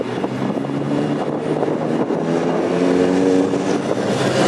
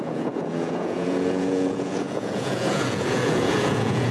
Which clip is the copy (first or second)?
second